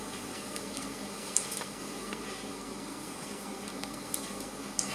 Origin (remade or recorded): remade